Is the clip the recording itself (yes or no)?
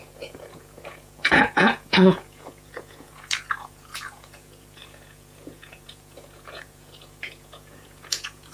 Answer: no